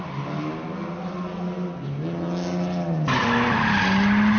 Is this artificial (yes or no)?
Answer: no